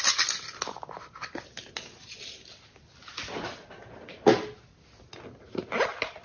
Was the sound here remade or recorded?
recorded